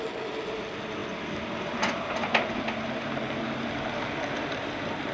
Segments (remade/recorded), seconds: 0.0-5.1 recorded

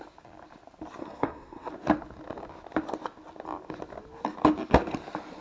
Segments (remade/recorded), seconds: 0.0-1.0 recorded; 1.0-1.7 remade; 1.7-5.4 recorded

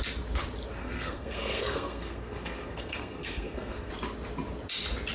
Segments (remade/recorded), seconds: 0.0-0.8 recorded; 0.8-3.9 remade; 3.9-5.1 recorded

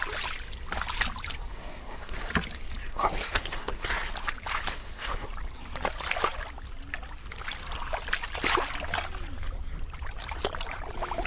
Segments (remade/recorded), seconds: 0.0-1.5 recorded; 1.5-2.3 remade; 2.3-2.9 recorded; 2.9-4.1 remade; 4.1-4.7 recorded; 4.7-5.3 remade; 5.3-11.3 recorded

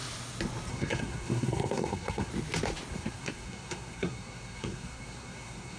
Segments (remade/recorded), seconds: 0.0-0.7 recorded; 0.7-2.3 remade; 2.3-2.9 recorded; 2.9-5.8 remade

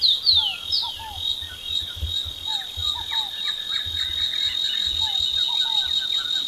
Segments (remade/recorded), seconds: 0.0-6.5 recorded